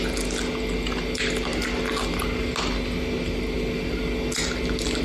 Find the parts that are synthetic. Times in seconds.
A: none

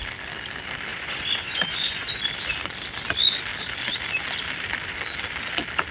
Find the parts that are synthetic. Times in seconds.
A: 0.9-2.2 (vocoder, Vocos)

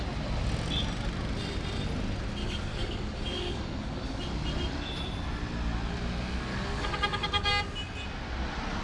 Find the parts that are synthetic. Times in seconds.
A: 2.4-4.2 (codec, DAC); 6.5-7.5

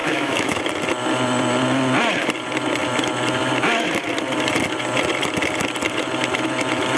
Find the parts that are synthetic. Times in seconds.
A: 0.0-0.6 (autoencoder, DAC-VAE)